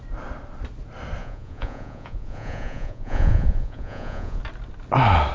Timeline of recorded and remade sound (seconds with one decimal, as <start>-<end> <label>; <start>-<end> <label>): 0.0-1.2 recorded; 1.2-4.4 remade; 4.4-5.3 recorded